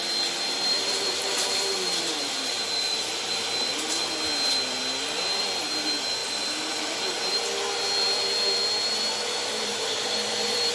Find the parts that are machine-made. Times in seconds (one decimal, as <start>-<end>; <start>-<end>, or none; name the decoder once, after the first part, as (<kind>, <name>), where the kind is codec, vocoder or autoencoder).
0.7-4.1 (vocoder, BigVGAN v2); 6.2-7.3; 9.4-10.7